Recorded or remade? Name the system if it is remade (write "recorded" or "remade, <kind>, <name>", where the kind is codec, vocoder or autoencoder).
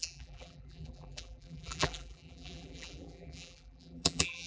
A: remade, vocoder, BigVGAN v2